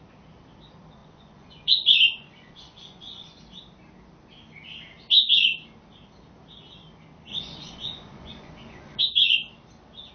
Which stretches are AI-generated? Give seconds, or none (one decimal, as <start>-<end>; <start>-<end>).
1.0-3.4; 7.3-9.0